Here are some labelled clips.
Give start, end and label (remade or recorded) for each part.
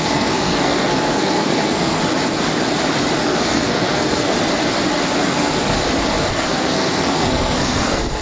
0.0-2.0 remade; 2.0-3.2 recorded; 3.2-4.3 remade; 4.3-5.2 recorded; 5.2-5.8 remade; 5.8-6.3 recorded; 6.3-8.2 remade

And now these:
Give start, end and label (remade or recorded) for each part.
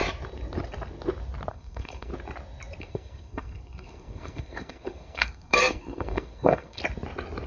0.0-1.5 recorded; 1.5-2.1 remade; 2.1-2.8 recorded; 2.8-6.8 remade; 6.8-7.5 recorded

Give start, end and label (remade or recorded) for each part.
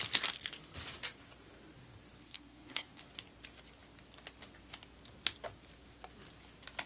0.0-2.2 recorded; 2.2-3.0 remade; 3.0-6.9 recorded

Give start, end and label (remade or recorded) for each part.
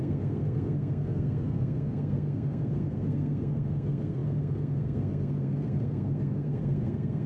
0.0-7.3 remade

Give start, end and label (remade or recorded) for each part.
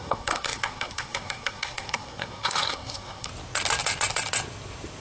0.0-3.3 remade; 3.3-5.0 recorded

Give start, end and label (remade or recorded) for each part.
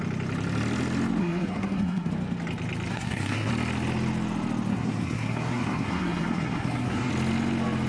0.0-1.2 recorded; 1.2-2.1 remade; 2.1-2.9 recorded; 2.9-3.5 remade; 3.5-4.7 recorded; 4.7-7.1 remade; 7.1-7.9 recorded